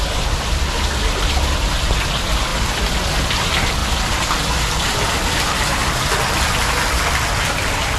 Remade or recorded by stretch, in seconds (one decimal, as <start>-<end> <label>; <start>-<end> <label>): 0.0-8.0 recorded